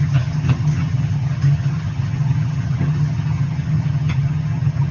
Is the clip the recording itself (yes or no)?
no